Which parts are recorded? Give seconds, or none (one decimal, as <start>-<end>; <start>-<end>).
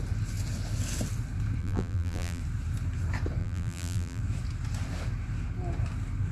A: 0.0-1.6; 2.4-3.4; 4.2-6.3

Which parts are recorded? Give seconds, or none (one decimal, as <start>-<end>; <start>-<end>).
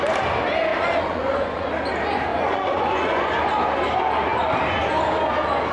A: 0.0-0.7; 1.7-2.3; 3.3-5.7